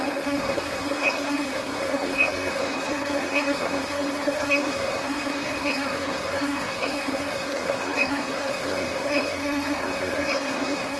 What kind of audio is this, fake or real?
fake